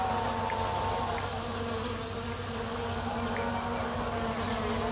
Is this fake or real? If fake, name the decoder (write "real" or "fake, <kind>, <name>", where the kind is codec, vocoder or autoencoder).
real